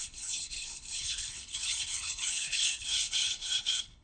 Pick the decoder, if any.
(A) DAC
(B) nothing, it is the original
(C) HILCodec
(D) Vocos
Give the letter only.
C